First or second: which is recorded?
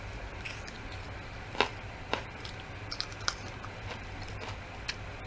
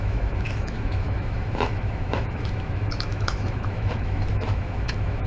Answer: first